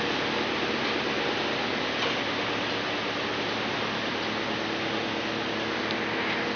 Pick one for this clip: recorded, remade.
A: recorded